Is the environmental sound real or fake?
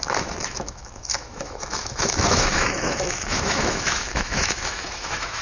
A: fake